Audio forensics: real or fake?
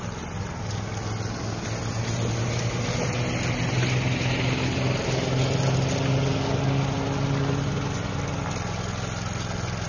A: real